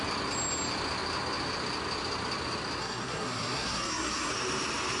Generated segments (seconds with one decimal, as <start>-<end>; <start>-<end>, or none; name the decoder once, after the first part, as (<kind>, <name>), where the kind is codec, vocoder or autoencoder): 2.8-4.3 (codec, SNAC)